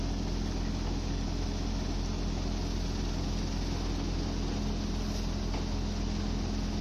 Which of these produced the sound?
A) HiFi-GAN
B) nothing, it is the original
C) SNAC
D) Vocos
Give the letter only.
B